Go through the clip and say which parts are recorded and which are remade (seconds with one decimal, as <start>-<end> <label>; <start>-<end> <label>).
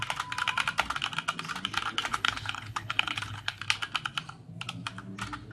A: 0.0-2.1 recorded; 2.1-3.6 remade; 3.6-5.5 recorded